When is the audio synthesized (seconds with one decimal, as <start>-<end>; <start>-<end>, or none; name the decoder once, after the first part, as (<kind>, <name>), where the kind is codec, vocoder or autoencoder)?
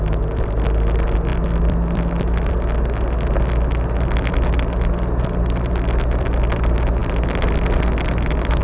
none